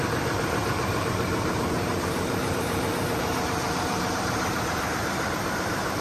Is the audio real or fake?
fake